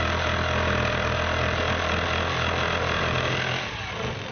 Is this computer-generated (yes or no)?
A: no